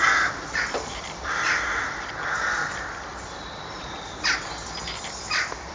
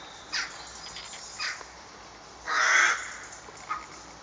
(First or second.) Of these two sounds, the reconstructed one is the first